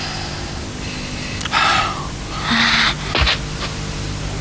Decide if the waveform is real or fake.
real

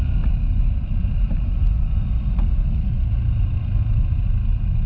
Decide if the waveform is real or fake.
real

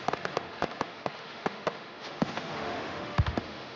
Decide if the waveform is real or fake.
fake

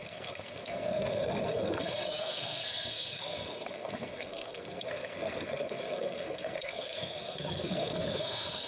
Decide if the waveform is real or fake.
fake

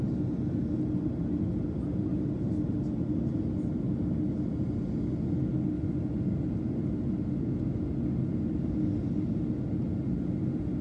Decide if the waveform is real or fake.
real